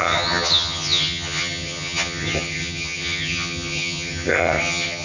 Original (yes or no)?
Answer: no